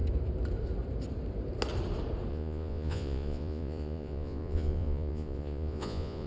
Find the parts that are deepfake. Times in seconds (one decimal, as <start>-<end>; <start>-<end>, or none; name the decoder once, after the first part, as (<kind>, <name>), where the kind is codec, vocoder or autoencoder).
2.3-6.3 (vocoder, Vocos)